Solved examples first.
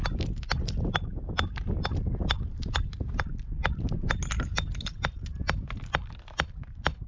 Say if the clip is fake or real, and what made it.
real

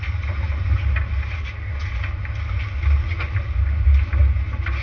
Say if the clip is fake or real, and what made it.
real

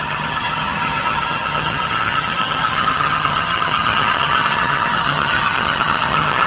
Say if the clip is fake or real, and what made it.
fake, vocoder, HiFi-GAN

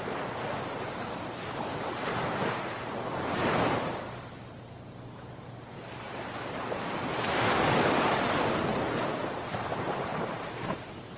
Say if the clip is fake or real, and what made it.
fake, vocoder, BigVGAN v2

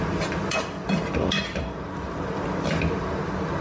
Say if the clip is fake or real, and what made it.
real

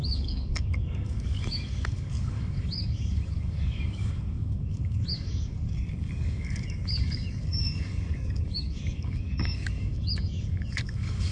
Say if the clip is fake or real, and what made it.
fake, codec, DAC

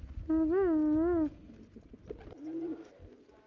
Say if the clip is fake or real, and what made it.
real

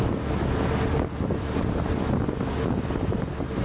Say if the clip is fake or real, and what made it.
real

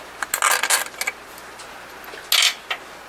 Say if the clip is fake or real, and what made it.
real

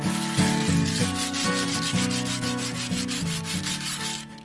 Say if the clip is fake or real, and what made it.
real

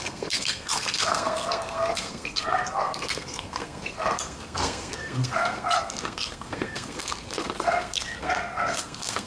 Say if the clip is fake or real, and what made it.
fake, codec, SNAC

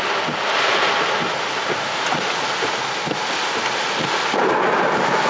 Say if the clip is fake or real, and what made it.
real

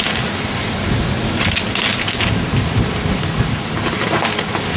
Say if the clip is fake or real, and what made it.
real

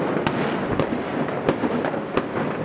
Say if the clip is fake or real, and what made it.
real